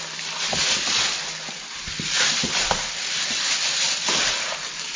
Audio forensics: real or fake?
real